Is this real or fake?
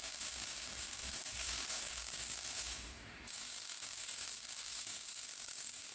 fake